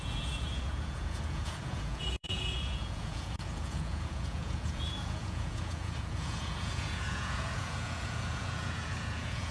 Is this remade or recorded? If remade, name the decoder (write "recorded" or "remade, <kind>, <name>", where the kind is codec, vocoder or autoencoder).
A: remade, vocoder, Vocos